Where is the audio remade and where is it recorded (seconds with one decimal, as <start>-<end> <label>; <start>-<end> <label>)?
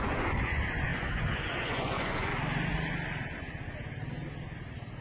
0.0-2.3 remade; 2.3-5.0 recorded